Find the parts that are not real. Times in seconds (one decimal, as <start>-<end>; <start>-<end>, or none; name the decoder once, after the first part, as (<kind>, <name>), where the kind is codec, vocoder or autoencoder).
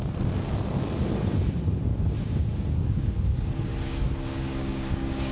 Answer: 1.9-5.3 (codec, DAC)